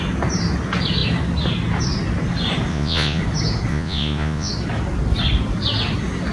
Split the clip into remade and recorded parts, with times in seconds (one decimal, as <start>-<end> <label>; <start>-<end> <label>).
0.0-2.7 recorded; 2.7-3.2 remade; 3.2-3.7 recorded; 3.7-4.5 remade; 4.5-6.3 recorded